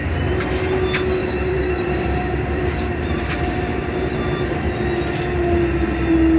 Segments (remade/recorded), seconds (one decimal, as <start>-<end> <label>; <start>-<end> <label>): 0.0-0.5 remade; 0.5-1.2 recorded; 1.2-4.7 remade; 4.7-6.4 recorded

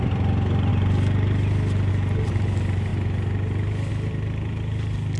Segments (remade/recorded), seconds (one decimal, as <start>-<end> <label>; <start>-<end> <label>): 0.0-0.7 remade; 0.7-1.9 recorded; 1.9-5.2 remade

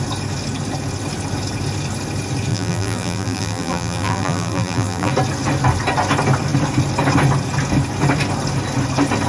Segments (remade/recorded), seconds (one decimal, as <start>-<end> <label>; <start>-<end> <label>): 0.0-2.5 recorded; 2.5-5.1 remade; 5.1-9.3 recorded

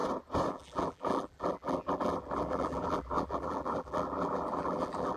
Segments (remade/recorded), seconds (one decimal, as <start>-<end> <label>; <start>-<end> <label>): 0.0-0.5 recorded; 0.5-5.2 remade

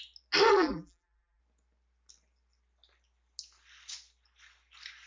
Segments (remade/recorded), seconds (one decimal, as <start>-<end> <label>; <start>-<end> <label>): 0.0-0.5 recorded; 0.5-1.4 remade; 1.4-5.1 recorded